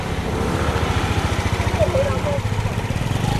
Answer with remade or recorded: recorded